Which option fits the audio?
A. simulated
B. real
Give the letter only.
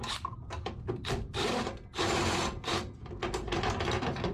B